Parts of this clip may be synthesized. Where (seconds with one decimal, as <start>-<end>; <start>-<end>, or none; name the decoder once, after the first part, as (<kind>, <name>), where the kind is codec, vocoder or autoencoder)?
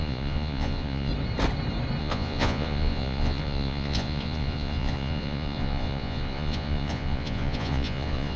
0.0-1.1 (vocoder, Vocos); 2.0-8.4